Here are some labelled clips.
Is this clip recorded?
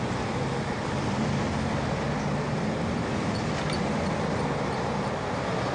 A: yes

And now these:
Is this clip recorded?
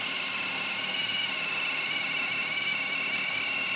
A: yes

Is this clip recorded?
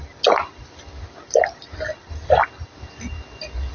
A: yes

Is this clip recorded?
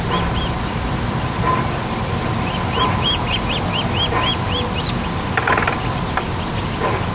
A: yes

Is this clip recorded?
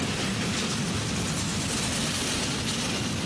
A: yes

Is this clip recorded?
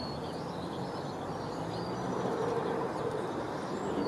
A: yes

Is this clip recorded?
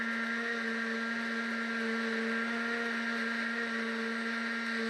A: yes